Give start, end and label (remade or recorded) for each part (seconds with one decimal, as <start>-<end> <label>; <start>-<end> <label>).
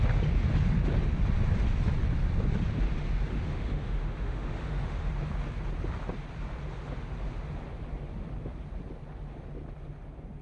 0.0-3.3 recorded; 3.3-5.1 remade; 5.1-10.4 recorded